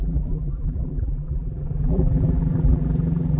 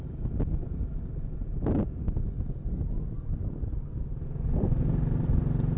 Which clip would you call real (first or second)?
second